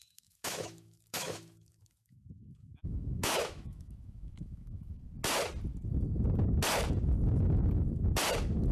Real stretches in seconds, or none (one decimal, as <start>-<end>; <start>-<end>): 5.0-8.7